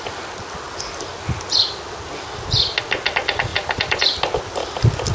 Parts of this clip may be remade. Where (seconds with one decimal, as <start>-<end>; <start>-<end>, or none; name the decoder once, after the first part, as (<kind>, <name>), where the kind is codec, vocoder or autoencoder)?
3.5-4.0 (vocoder, BigVGAN v2)